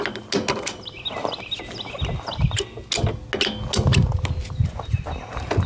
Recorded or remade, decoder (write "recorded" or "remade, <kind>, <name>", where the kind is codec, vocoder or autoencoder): recorded